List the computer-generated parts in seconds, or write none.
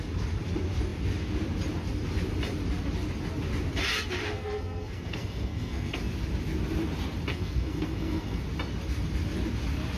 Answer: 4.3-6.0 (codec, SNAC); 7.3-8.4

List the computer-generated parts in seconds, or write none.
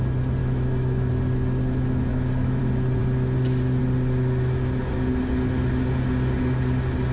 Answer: 0.4-1.1 (autoencoder, DAC-VAE); 2.1-2.6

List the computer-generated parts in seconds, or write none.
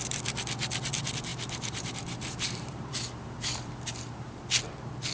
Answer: 1.3-4.4 (vocoder, BigVGAN v2)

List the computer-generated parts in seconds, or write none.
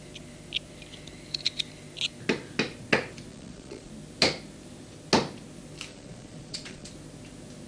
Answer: 3.3-3.9 (vocoder, Vocos); 5.9-6.9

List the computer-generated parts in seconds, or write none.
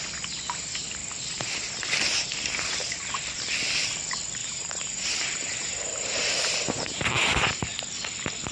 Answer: 4.4-7.4 (vocoder, BigVGAN v2)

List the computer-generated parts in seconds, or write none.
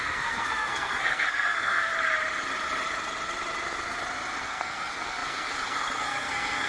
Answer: 0.0-1.9 (codec, SNAC); 4.4-6.7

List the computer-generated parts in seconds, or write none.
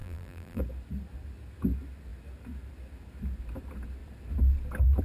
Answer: 0.0-0.6 (vocoder, BigVGAN v2)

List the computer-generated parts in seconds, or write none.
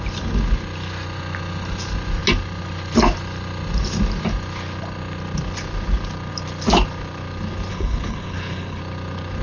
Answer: 7.7-8.8 (codec, HILCodec)